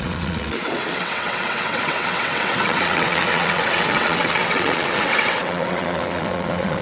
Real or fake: fake